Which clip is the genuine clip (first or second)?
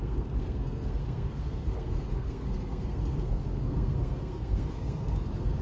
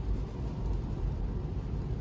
second